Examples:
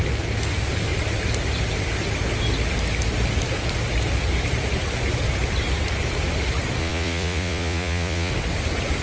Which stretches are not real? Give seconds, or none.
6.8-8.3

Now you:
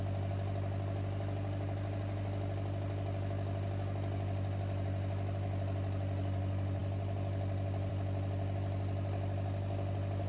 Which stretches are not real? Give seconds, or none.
none